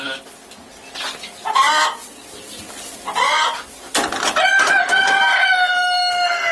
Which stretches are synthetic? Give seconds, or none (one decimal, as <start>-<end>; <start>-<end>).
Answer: none